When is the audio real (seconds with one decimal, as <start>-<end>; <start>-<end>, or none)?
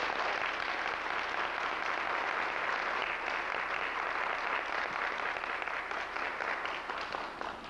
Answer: 0.0-7.7